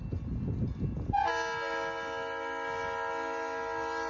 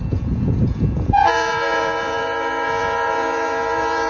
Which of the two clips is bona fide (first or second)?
first